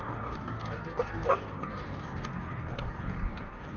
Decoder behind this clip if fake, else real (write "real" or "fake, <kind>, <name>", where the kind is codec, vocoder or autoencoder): fake, codec, DAC